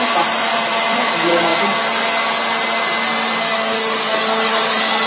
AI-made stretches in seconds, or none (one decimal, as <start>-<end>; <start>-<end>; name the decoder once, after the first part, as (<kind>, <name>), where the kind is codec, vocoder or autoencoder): 0.5-1.0 (vocoder, BigVGAN v2)